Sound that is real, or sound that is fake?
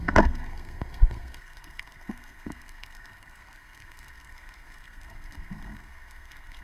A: fake